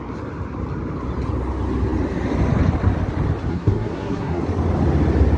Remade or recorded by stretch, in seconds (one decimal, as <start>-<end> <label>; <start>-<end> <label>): 0.0-3.5 recorded; 3.5-4.4 remade; 4.4-5.4 recorded